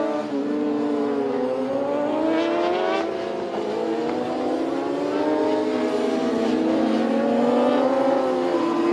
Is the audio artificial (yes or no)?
no